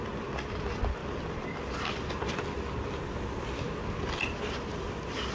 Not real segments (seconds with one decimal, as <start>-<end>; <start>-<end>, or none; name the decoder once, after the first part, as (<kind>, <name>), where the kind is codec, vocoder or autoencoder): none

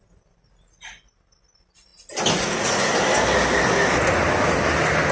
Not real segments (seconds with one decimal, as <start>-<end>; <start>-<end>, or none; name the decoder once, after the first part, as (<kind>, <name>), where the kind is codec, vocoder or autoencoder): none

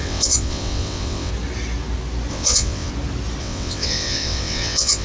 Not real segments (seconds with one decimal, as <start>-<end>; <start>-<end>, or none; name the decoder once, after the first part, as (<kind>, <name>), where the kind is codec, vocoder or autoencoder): 0.0-1.3 (vocoder, WaveNeXt); 2.3-2.9; 3.4-5.0

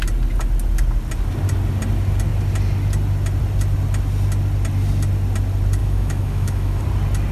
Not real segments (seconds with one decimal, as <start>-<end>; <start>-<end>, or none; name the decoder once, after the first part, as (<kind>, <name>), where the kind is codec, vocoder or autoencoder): 5.8-6.8 (autoencoder, DAC-VAE)